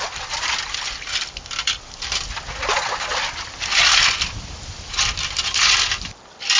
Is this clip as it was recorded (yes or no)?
yes